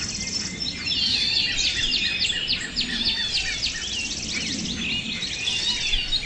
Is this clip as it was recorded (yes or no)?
yes